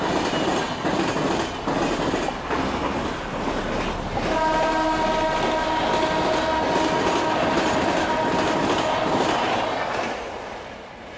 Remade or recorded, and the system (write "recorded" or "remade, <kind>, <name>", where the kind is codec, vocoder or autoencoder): recorded